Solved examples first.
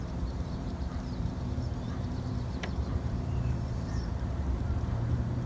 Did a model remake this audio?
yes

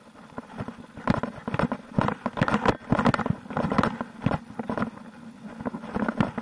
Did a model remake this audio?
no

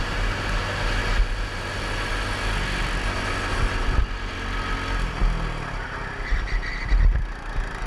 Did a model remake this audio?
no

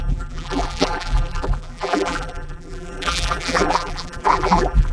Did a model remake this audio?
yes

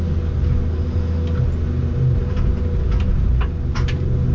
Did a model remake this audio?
no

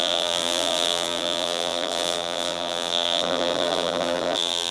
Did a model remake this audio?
yes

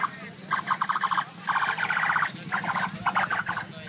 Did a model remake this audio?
no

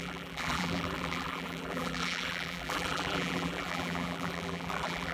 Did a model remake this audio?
yes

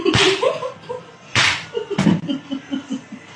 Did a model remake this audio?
yes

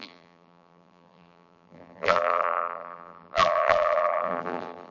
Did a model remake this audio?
yes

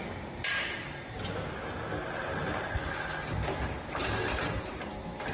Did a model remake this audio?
no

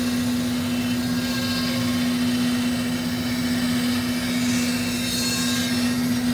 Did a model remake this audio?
no